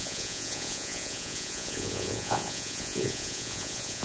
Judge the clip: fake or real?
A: fake